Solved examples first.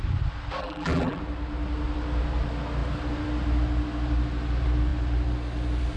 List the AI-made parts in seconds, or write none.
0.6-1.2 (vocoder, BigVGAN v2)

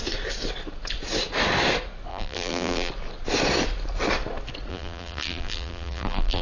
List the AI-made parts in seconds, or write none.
2.1-2.9 (vocoder, BigVGAN v2); 4.7-6.4

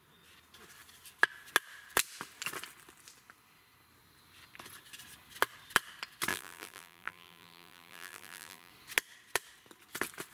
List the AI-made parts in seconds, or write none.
6.3-8.7 (vocoder, BigVGAN v2)

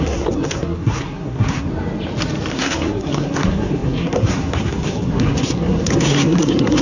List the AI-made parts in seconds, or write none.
0.0-1.7 (codec, SNAC); 2.5-6.8

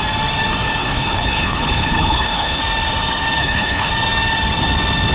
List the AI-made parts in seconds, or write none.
0.8-2.6 (codec, HILCodec); 3.4-3.9

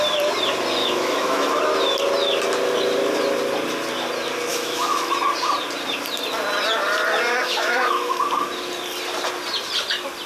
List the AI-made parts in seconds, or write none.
0.8-1.6 (autoencoder, DAC-VAE); 4.5-5.1; 7.4-8.2